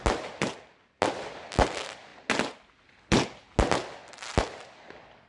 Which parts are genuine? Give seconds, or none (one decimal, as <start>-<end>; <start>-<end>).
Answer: 0.0-5.3